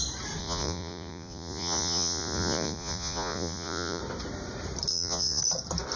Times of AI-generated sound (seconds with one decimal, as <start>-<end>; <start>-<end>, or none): 0.4-4.0; 4.9-5.4